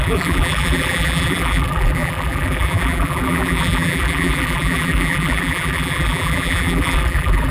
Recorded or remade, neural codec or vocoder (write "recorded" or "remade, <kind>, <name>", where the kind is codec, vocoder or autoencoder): remade, vocoder, BigVGAN v2